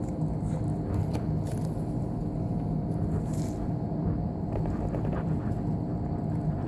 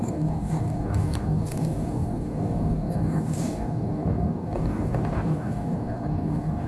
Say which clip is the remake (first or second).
second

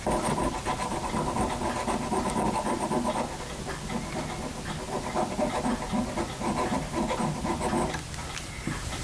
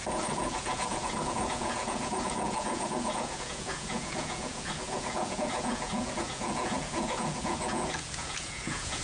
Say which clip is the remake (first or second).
second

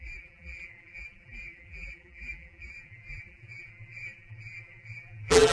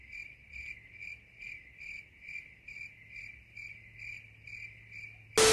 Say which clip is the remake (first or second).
first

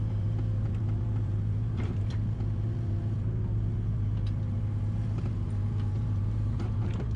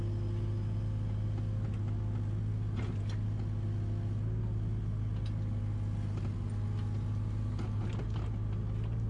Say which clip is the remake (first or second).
first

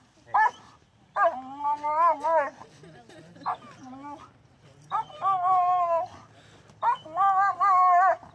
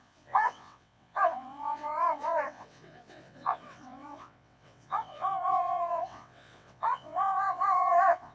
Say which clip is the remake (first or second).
second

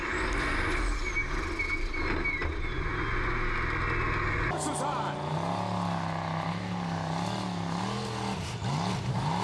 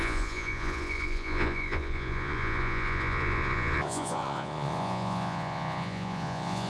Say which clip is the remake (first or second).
second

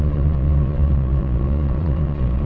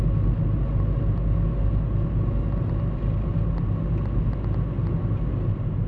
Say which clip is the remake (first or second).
first